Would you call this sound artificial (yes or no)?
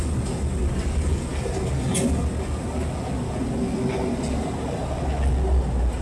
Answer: no